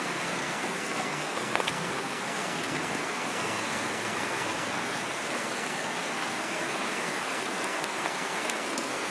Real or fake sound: fake